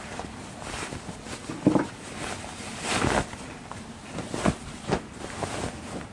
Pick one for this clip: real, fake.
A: real